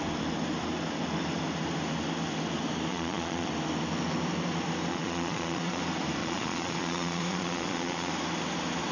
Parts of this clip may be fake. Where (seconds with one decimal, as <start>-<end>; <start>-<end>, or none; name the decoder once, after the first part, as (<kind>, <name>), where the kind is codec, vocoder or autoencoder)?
2.9-3.5 (vocoder, Vocos); 4.9-5.8; 6.2-8.1